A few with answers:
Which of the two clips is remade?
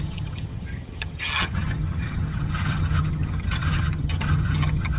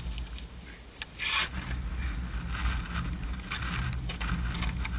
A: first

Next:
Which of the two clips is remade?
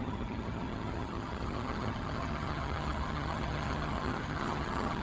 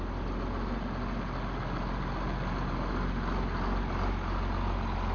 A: first